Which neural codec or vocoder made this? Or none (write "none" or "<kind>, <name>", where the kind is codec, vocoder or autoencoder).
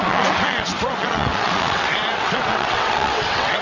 vocoder, WaveNeXt